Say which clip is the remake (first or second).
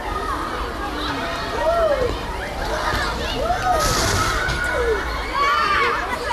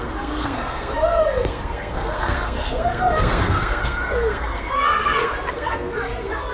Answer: second